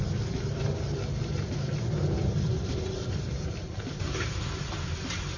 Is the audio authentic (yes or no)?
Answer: yes